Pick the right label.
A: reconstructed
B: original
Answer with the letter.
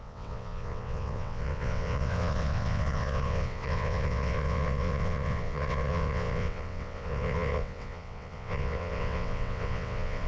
A